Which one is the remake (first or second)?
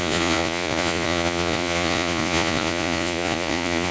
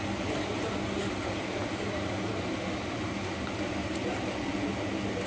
first